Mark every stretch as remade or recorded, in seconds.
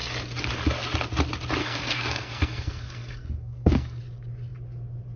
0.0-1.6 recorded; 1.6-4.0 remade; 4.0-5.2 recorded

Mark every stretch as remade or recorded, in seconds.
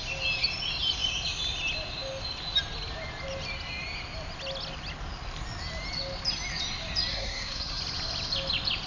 0.0-7.1 recorded; 7.1-7.8 remade; 7.8-8.9 recorded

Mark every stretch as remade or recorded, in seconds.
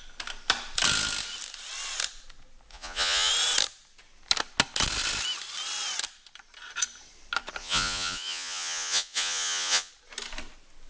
0.0-2.7 recorded; 2.7-3.3 remade; 3.3-7.6 recorded; 7.6-9.9 remade; 9.9-10.9 recorded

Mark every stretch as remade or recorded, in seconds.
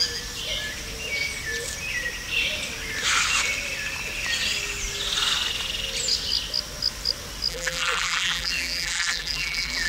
0.0-7.5 recorded; 7.5-9.9 remade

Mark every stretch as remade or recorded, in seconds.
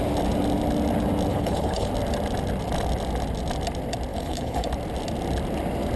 0.0-1.3 recorded; 1.3-1.9 remade; 1.9-4.1 recorded; 4.1-4.7 remade; 4.7-6.0 recorded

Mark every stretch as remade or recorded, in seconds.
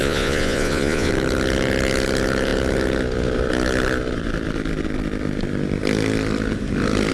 0.0-1.1 remade; 1.1-7.1 recorded